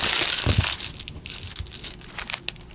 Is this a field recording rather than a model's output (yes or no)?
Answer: yes